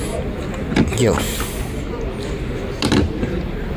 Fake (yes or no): no